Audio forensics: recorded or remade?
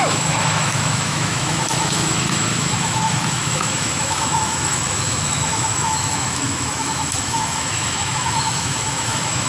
remade